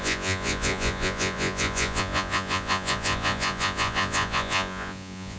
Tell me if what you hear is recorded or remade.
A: remade